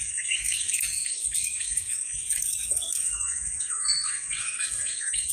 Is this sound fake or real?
fake